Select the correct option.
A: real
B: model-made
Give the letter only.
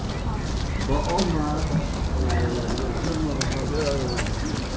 A